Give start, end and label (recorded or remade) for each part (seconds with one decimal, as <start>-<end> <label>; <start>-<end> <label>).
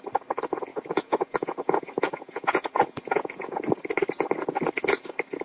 0.0-0.7 recorded; 0.7-3.6 remade; 3.6-5.4 recorded